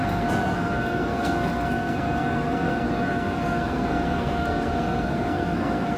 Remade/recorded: remade